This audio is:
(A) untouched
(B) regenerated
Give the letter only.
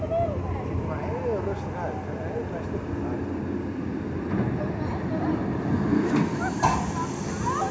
A